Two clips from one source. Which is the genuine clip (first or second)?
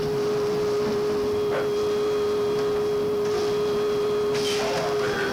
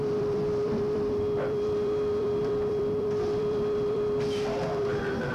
first